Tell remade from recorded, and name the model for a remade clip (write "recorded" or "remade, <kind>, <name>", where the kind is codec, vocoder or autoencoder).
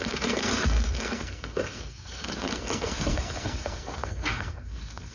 remade, codec, SNAC